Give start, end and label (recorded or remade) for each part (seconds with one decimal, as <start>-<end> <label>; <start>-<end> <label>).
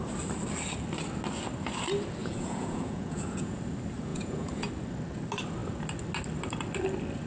0.0-2.2 recorded; 2.2-3.6 remade; 3.6-4.1 recorded; 4.1-4.7 remade; 4.7-7.3 recorded